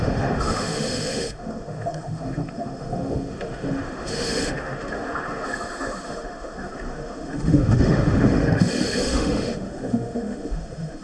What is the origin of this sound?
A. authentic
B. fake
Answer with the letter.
B